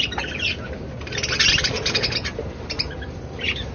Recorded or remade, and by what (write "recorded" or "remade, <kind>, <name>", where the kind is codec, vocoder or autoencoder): remade, vocoder, BigVGAN v2